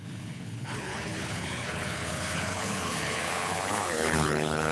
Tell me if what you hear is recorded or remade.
remade